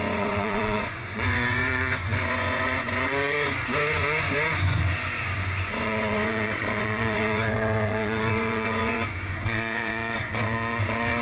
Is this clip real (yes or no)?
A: no